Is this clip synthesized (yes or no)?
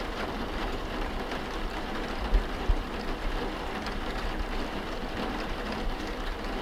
yes